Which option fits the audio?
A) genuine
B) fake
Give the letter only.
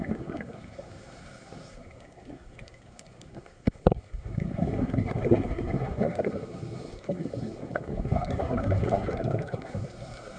B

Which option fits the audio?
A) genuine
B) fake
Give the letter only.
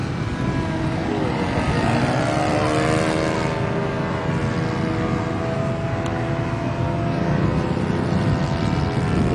A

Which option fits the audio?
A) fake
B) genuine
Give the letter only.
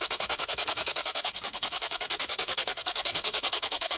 A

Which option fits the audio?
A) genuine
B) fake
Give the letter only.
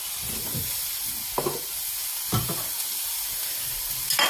A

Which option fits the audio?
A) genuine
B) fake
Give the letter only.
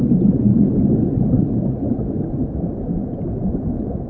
A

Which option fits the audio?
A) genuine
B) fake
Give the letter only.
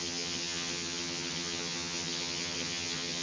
B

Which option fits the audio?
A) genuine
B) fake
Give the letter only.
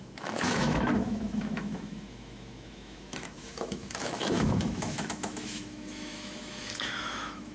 B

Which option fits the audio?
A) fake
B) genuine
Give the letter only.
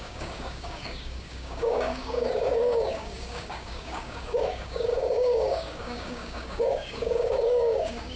A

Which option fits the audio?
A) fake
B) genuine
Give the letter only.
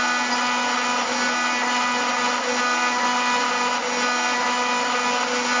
B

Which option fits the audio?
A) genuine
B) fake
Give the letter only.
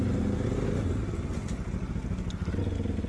A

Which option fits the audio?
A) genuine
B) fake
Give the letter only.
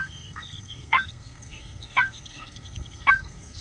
B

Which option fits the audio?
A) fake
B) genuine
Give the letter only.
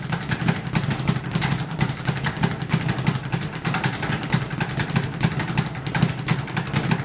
B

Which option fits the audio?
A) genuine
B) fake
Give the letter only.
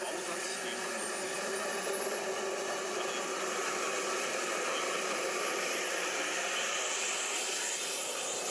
A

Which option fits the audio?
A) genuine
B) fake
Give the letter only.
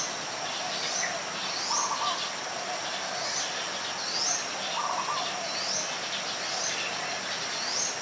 A